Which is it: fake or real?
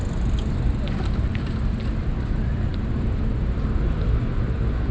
real